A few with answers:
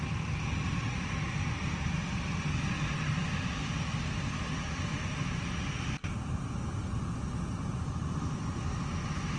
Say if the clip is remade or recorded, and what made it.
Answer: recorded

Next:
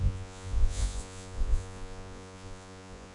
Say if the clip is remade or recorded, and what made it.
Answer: remade, vocoder, Vocos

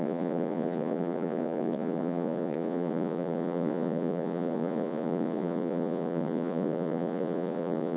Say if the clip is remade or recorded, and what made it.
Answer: remade, vocoder, Vocos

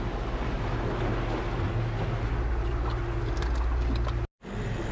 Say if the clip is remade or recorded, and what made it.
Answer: recorded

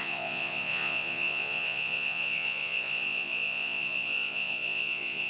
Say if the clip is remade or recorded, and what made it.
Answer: remade, vocoder, Vocos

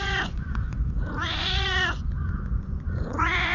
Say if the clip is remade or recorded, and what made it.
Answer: remade, vocoder, Vocos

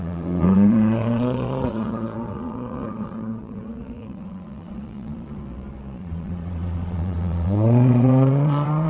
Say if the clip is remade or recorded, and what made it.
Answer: remade, vocoder, Vocos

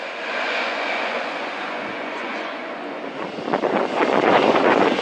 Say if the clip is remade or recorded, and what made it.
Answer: remade, vocoder, Vocos